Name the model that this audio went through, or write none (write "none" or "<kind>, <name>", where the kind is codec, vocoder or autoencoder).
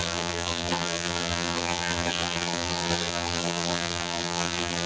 vocoder, BigVGAN v2